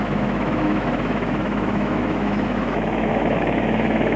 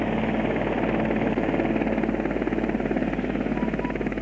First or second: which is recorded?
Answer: second